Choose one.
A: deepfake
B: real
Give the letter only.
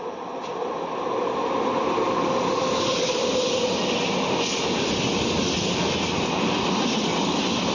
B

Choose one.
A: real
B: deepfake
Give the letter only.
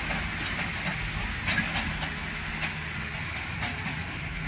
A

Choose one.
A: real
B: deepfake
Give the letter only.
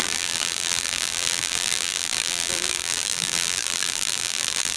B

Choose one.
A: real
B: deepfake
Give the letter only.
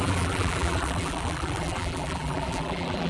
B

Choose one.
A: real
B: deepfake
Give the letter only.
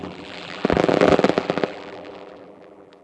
B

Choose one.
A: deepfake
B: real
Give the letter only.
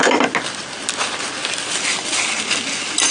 B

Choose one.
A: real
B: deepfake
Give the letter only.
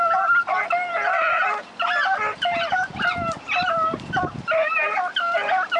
B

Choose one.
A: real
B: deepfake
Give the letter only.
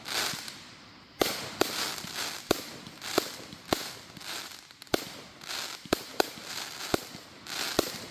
A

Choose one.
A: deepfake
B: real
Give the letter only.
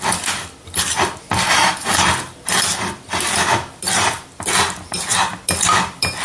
B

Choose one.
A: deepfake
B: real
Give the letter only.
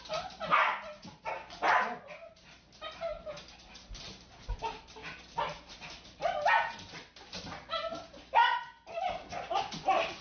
B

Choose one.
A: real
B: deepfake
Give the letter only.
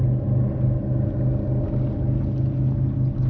A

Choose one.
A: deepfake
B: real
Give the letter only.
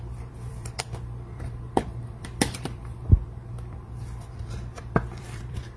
A